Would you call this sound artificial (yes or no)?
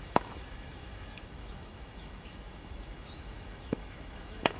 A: yes